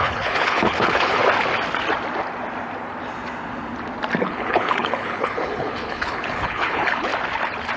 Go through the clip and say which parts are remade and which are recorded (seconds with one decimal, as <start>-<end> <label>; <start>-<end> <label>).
0.0-1.2 remade; 1.2-4.2 recorded; 4.2-7.1 remade; 7.1-7.8 recorded